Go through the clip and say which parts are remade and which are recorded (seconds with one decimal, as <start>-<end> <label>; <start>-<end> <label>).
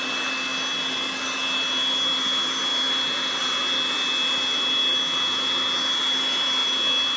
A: 0.0-7.2 recorded